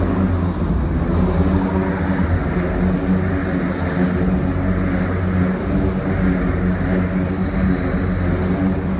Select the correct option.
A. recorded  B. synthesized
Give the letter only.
A